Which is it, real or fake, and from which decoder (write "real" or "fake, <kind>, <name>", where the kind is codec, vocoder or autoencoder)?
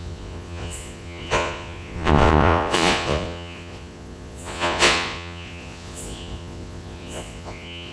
fake, vocoder, Vocos